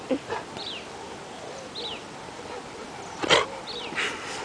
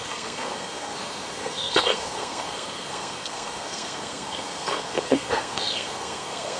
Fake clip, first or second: second